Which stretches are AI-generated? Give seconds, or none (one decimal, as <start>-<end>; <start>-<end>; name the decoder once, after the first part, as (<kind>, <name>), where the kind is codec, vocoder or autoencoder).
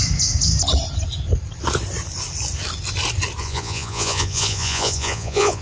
3.4-5.6 (vocoder, Vocos)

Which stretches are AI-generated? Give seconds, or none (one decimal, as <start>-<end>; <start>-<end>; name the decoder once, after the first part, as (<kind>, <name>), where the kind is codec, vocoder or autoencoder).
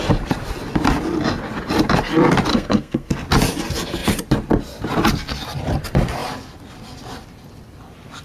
2.5-3.1 (codec, SNAC)